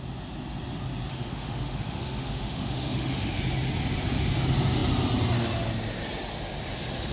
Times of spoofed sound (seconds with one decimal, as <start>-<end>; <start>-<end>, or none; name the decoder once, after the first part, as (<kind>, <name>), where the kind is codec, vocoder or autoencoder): 1.1-3.4 (autoencoder, DAC-VAE)